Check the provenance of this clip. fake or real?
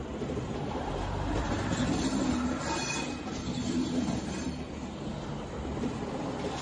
real